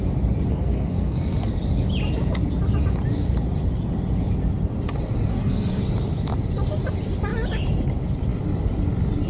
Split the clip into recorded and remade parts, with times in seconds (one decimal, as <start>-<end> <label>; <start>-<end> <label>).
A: 0.0-0.5 recorded; 0.5-1.5 remade; 1.5-5.3 recorded; 5.3-5.8 remade; 5.8-9.3 recorded

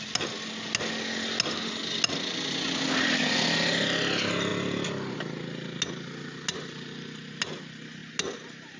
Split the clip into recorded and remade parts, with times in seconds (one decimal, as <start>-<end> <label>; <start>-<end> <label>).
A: 0.0-8.8 recorded

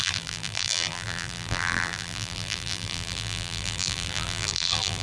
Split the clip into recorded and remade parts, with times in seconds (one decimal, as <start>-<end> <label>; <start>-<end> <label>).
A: 0.0-5.0 remade

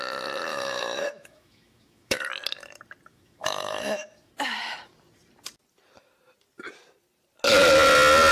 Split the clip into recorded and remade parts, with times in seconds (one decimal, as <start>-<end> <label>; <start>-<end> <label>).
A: 0.0-0.5 recorded; 0.5-2.2 remade; 2.2-3.1 recorded; 3.1-4.3 remade; 4.3-8.3 recorded

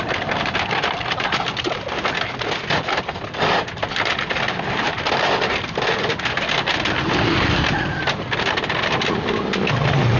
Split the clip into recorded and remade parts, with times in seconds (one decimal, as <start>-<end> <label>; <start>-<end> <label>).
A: 0.0-10.2 recorded

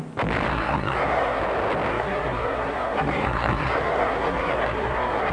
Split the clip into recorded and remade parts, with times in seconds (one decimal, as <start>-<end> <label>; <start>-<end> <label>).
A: 0.0-0.5 recorded; 0.5-1.4 remade; 1.4-1.9 recorded; 1.9-5.3 remade

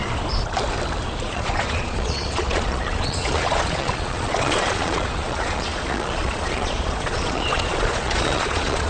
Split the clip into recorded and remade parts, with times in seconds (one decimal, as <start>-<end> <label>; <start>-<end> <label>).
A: 0.0-1.2 recorded; 1.2-8.9 remade

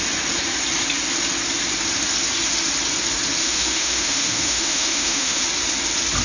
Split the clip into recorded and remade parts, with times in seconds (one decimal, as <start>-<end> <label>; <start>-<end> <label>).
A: 0.0-3.4 recorded; 3.4-5.4 remade; 5.4-6.2 recorded